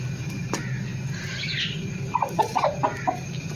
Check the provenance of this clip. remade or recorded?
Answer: recorded